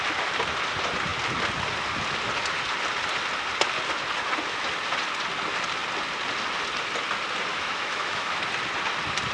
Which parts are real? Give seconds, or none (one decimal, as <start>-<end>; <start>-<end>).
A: 0.0-7.5; 8.5-9.3